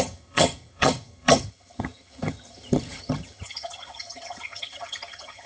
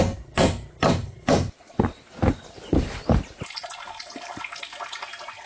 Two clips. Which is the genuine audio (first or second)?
second